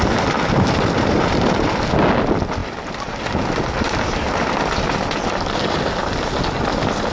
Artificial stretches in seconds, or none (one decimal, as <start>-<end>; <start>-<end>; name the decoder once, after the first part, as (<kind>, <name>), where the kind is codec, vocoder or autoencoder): none